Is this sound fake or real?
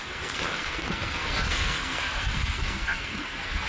fake